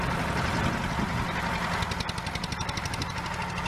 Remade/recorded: recorded